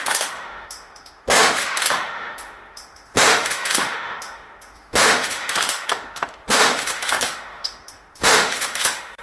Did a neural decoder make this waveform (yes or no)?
yes